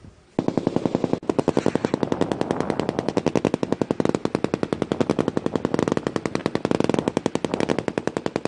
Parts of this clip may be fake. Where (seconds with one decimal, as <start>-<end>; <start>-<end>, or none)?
none